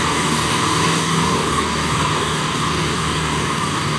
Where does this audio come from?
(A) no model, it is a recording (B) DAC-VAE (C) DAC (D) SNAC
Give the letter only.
C